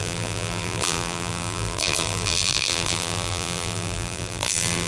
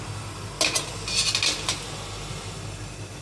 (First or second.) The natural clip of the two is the second